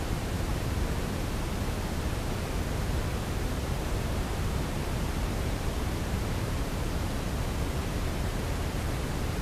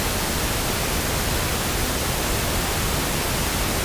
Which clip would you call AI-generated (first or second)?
first